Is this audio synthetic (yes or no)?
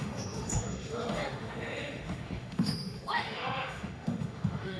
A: yes